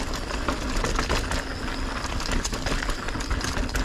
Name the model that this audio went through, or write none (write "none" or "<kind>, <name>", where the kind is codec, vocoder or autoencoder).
none